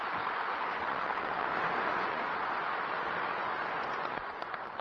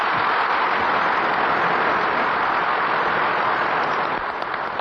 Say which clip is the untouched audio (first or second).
second